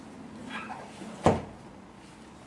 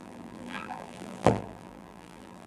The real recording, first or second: first